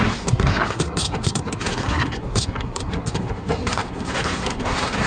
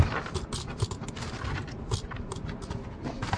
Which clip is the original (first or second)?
second